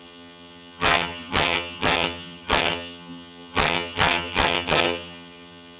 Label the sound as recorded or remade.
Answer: remade